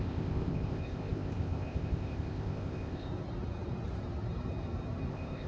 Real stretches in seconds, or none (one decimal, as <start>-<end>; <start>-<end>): 3.1-5.1